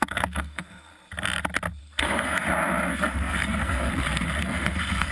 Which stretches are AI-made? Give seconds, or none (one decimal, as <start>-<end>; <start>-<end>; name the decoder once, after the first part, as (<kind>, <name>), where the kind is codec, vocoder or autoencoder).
0.0-0.9 (codec, SNAC); 1.8-2.4; 2.9-3.9; 4.4-5.1